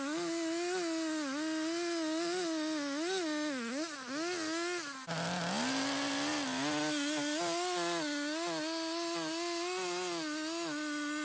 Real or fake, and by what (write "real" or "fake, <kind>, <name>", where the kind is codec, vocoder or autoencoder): real